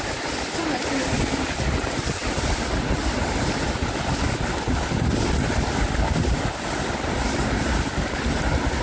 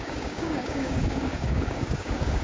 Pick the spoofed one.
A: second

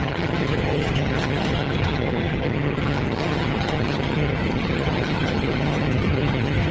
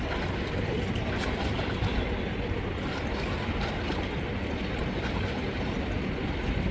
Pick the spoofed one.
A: first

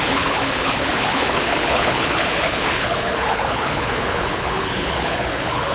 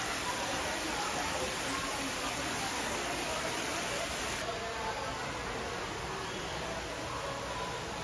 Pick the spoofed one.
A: first